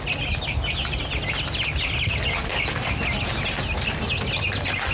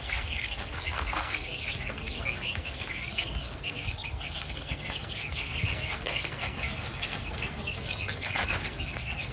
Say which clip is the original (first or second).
first